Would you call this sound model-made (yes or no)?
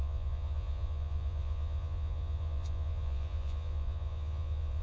yes